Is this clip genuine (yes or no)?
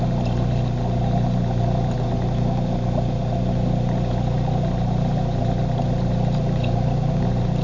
yes